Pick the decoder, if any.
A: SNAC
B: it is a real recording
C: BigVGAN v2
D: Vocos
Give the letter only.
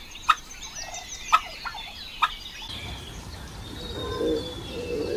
B